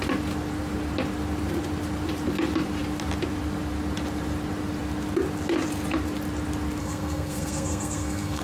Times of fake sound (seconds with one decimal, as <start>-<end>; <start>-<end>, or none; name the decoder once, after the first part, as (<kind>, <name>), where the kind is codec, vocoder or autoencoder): 6.8-8.4 (codec, SNAC)